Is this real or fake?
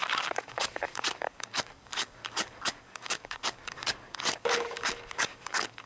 fake